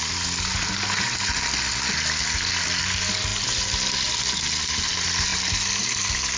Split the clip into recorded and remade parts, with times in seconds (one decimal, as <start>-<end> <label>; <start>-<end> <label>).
0.0-6.4 recorded